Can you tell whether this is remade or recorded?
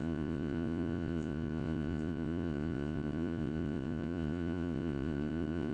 remade